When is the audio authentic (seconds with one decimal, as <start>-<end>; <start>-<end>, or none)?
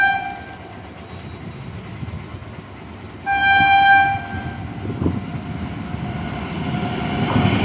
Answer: 0.0-7.6